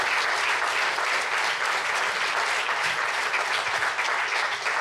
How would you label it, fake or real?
real